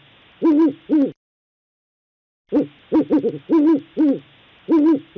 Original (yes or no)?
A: yes